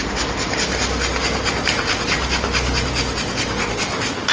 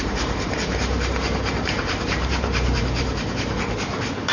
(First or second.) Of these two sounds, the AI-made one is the second